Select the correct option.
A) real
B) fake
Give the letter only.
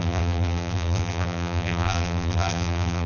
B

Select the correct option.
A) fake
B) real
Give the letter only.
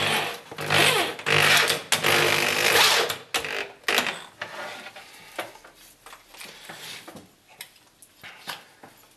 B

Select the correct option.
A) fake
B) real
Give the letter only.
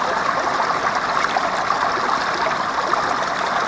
B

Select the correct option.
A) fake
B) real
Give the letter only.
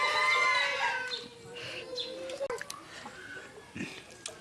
B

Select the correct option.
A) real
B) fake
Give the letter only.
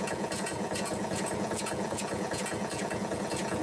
B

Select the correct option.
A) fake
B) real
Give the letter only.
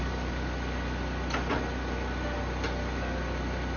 B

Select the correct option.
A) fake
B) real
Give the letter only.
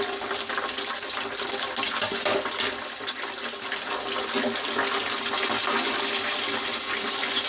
B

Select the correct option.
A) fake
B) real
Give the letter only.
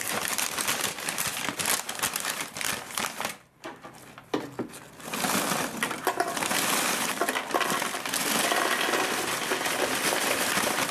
B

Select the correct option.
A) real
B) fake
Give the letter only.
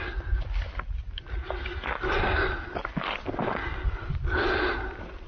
A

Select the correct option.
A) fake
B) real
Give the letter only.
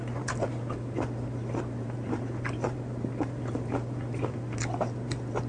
A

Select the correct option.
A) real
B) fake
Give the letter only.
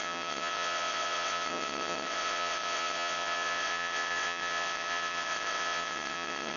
B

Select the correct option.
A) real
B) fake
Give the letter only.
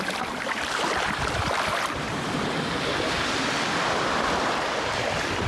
B